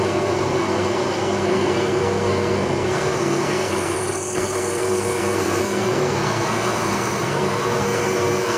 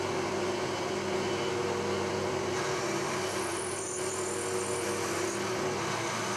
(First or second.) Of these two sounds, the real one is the second